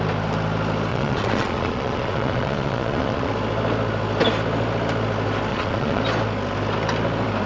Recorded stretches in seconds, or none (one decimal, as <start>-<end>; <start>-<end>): 0.0-0.9; 3.3-5.5; 6.0-7.5